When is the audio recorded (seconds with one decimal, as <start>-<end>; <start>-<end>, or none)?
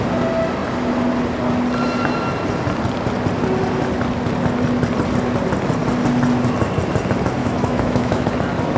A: 0.0-7.4; 8.3-8.8